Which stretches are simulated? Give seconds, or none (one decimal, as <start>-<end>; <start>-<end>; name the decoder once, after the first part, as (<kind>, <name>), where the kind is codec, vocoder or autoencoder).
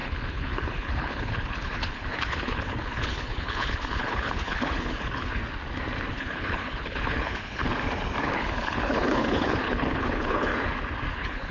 0.0-5.4 (codec, HILCodec); 6.1-7.6; 8.2-10.5; 11.1-11.5